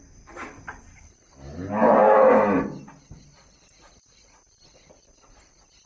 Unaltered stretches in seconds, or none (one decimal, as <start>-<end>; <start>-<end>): 0.0-5.9